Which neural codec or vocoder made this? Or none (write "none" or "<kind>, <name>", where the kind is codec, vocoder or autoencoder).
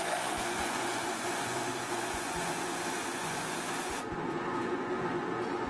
vocoder, Vocos